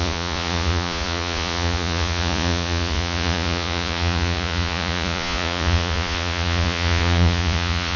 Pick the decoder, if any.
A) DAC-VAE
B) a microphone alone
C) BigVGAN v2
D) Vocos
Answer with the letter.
D